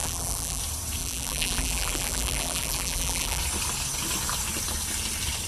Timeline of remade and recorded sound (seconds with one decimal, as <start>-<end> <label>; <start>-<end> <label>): 0.0-0.6 remade; 0.6-1.0 recorded; 1.0-3.4 remade; 3.4-5.5 recorded